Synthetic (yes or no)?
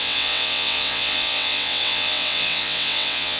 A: yes